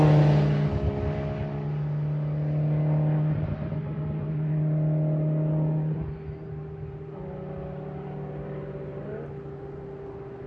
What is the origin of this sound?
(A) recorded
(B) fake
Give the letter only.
A